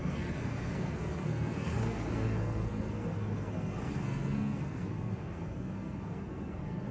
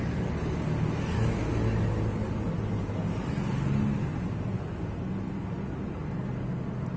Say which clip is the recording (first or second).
second